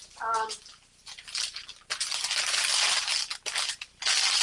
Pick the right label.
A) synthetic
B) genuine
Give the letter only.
B